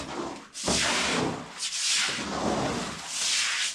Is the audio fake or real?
real